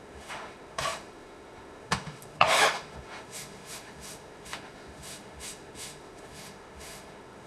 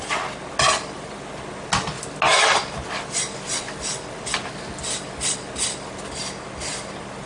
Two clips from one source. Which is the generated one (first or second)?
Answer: first